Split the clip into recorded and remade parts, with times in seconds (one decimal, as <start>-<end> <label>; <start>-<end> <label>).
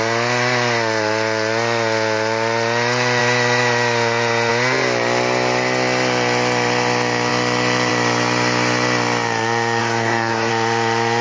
0.0-9.8 recorded; 9.8-10.5 remade; 10.5-11.2 recorded